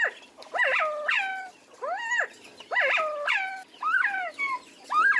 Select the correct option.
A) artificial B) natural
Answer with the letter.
B